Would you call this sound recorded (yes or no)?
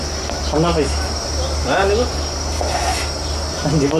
yes